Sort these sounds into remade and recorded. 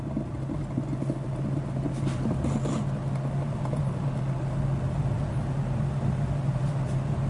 recorded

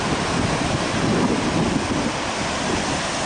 recorded